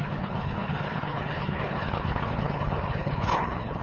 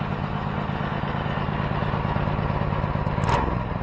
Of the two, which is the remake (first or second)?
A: first